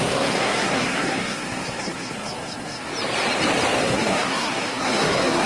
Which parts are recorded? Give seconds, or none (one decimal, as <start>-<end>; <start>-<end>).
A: 2.9-3.8